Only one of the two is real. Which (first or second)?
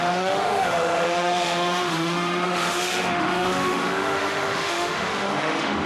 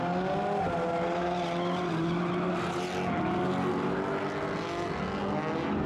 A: second